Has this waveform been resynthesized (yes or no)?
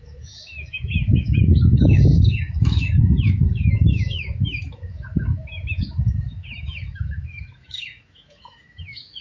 yes